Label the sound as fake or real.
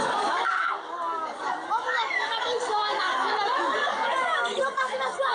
fake